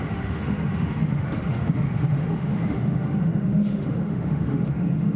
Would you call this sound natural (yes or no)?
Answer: no